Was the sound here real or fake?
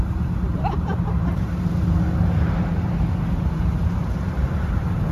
fake